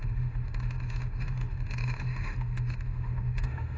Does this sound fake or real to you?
fake